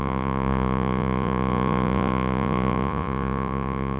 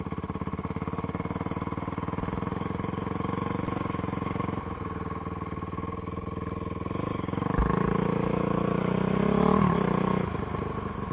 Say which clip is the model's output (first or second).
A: first